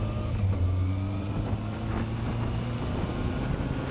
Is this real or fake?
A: real